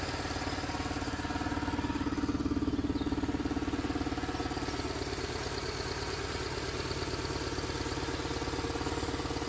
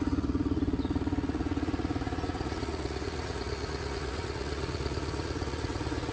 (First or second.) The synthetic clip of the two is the second